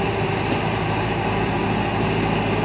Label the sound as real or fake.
real